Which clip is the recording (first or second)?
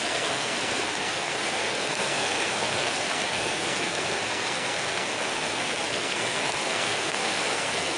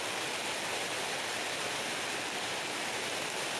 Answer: second